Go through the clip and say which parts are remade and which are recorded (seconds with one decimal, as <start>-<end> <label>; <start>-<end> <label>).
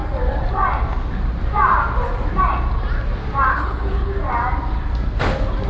0.0-3.5 recorded; 3.5-4.1 remade; 4.1-5.7 recorded